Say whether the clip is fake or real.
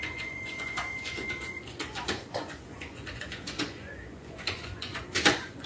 fake